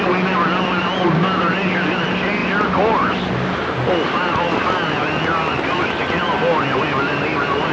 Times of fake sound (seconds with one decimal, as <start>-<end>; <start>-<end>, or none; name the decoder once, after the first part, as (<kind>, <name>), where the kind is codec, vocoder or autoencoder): none